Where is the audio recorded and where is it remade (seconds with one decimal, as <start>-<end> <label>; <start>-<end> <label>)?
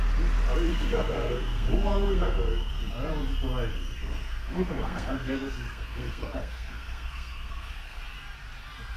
0.0-0.7 recorded; 0.7-2.7 remade; 2.7-3.7 recorded; 3.7-8.0 remade; 8.0-9.0 recorded